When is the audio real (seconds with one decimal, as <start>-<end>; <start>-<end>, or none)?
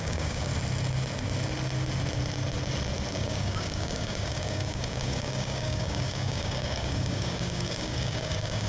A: 0.5-3.1